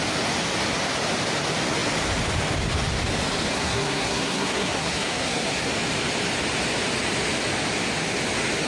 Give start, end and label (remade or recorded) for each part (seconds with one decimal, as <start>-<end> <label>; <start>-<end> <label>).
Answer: 0.0-3.5 recorded; 3.5-5.7 remade; 5.7-8.7 recorded